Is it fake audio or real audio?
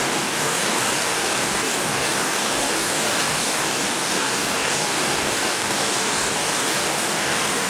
fake